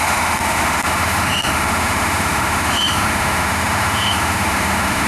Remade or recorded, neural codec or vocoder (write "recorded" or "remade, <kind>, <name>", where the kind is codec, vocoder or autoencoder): remade, autoencoder, DAC-VAE